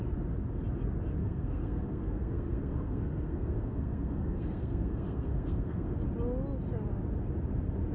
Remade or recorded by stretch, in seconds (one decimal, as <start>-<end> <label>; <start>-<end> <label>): 0.0-1.2 recorded; 1.2-5.9 remade; 5.9-7.9 recorded